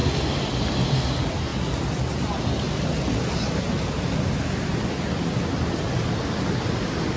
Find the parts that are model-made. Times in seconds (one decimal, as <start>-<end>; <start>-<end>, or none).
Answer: none